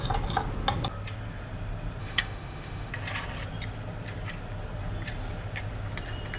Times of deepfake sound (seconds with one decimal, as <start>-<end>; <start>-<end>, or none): 2.0-2.9